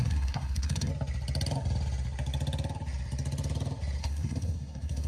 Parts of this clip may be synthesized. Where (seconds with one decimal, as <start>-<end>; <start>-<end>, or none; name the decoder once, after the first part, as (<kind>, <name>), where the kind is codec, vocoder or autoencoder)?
0.0-0.9 (codec, SNAC); 4.0-5.1